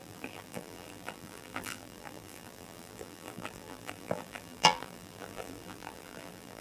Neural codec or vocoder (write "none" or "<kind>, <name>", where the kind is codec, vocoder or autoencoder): vocoder, BigVGAN v2